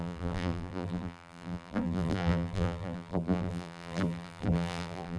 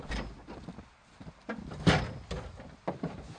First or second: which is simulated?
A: first